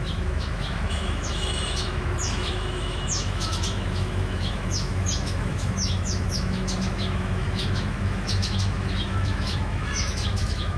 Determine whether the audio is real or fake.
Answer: fake